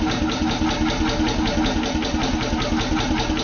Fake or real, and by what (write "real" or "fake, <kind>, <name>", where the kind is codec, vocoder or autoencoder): real